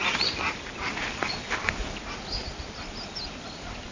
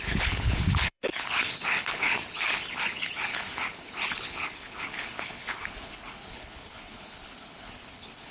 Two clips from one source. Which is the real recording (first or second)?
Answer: first